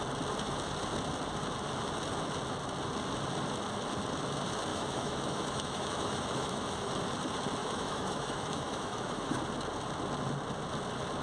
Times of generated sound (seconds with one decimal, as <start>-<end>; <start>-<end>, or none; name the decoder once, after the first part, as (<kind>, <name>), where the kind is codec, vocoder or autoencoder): 4.7-6.9 (autoencoder, DAC-VAE); 7.6-9.4